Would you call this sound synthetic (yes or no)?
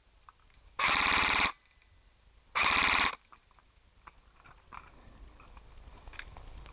no